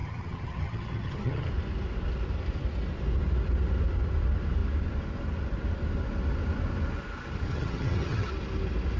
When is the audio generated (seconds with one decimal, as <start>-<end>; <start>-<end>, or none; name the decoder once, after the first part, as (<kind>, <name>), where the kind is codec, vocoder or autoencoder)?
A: 0.0-1.5 (vocoder, HiFi-GAN); 7.5-8.3

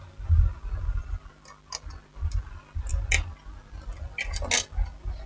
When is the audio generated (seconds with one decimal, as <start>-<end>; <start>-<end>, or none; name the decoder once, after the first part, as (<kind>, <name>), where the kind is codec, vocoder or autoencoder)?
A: none

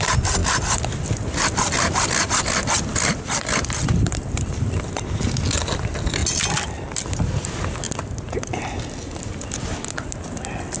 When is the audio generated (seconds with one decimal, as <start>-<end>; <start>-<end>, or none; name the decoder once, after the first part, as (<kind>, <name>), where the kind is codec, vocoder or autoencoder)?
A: 0.4-4.9 (vocoder, BigVGAN v2)